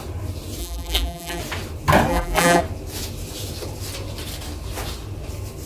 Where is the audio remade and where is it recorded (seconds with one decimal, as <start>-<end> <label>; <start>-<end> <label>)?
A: 0.0-0.6 recorded; 0.6-1.4 remade; 1.4-2.1 recorded; 2.1-2.6 remade; 2.6-5.7 recorded